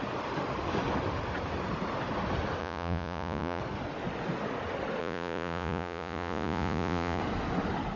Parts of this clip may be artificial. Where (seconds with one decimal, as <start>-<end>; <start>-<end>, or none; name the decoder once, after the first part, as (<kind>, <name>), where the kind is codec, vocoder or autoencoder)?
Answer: 2.6-3.6 (vocoder, Vocos); 5.0-7.2